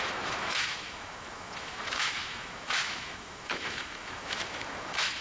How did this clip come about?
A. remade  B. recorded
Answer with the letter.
A